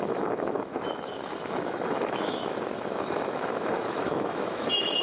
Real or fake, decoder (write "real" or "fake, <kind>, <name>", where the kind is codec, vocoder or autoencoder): fake, autoencoder, DAC-VAE